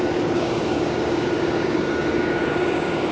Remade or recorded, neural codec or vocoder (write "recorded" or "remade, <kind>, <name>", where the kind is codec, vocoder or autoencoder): remade, codec, DAC